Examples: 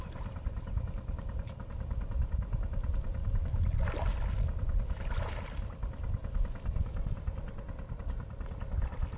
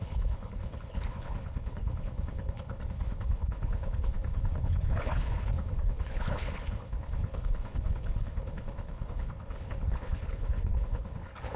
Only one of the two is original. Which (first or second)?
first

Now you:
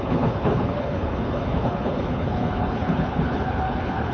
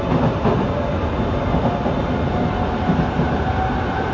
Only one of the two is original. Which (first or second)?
second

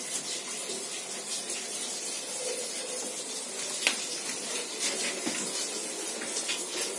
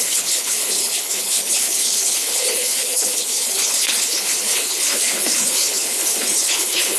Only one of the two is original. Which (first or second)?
first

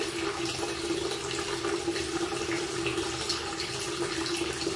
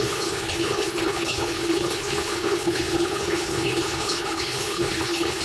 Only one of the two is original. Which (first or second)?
first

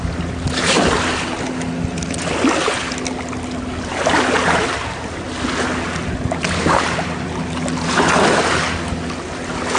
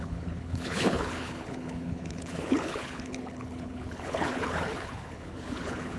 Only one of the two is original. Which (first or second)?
first